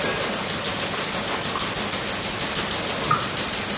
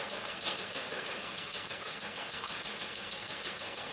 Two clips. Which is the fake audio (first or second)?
second